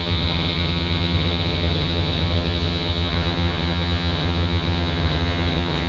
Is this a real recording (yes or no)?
no